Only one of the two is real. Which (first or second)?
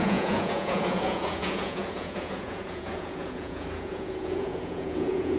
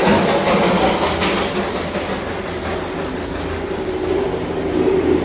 second